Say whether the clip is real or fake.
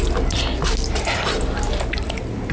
real